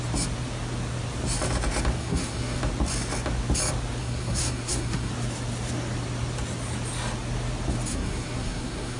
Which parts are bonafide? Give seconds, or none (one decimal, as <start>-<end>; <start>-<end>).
0.0-2.0; 2.6-4.0; 5.1-7.9